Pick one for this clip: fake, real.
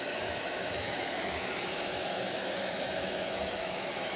fake